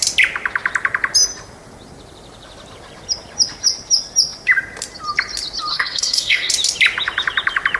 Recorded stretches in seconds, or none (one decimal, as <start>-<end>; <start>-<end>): 0.0-5.7; 6.5-7.8